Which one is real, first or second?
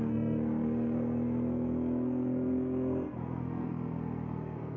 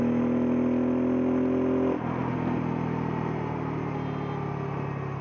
second